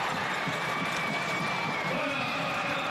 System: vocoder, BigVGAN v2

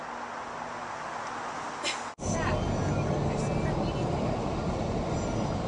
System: none